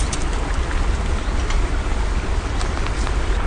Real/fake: real